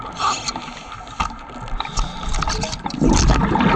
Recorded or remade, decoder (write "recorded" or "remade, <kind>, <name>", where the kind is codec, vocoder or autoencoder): recorded